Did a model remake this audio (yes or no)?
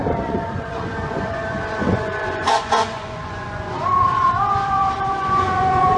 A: yes